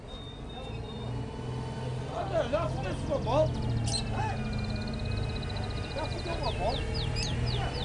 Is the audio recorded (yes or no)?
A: yes